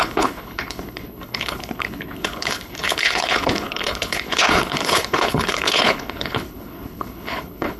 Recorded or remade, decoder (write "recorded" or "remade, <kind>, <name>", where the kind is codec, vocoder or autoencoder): remade, codec, HILCodec